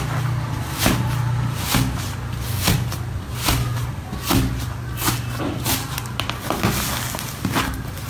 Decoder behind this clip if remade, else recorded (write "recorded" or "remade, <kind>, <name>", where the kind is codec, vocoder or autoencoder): recorded